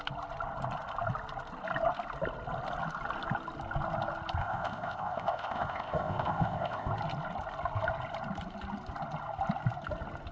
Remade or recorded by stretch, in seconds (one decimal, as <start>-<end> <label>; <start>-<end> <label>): 0.0-4.4 recorded; 4.4-6.9 remade; 6.9-10.3 recorded